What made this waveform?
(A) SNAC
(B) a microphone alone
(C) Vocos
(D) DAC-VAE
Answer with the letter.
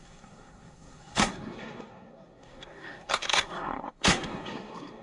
A